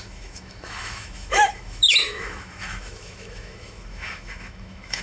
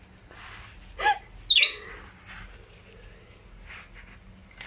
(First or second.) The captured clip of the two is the second